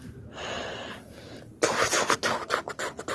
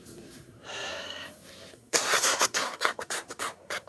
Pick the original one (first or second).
first